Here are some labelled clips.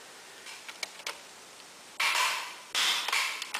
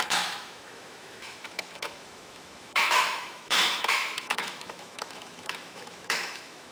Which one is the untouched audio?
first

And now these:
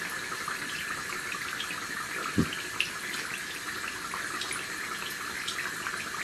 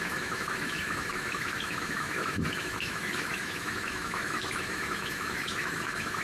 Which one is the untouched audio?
first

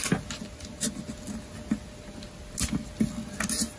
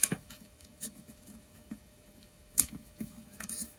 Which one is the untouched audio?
first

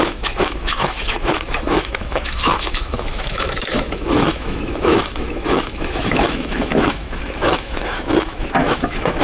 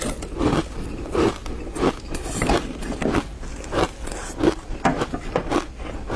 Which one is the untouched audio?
second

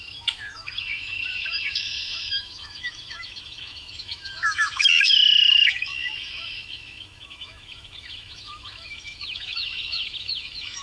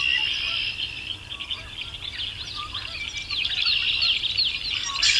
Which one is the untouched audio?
second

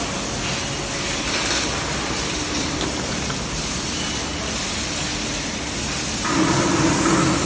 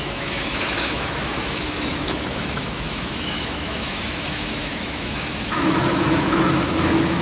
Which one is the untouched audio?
first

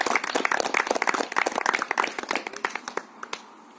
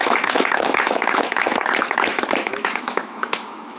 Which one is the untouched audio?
first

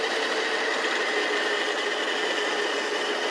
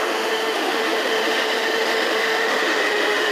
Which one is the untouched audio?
first